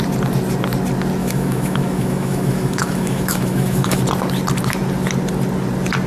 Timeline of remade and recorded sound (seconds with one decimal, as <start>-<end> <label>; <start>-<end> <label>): 0.0-1.2 recorded; 1.2-4.0 remade; 4.0-6.1 recorded